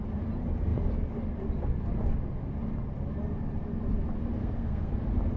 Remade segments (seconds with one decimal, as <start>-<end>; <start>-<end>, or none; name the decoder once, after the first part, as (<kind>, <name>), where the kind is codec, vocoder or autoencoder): 4.4-4.9 (codec, SNAC)